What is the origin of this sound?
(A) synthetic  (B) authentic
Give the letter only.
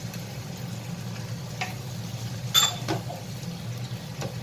B